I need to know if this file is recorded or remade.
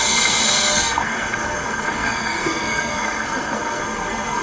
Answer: remade